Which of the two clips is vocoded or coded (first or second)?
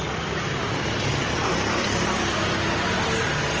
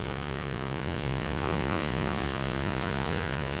second